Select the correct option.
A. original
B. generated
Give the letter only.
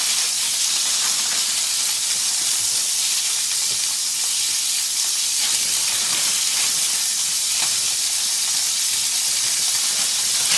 A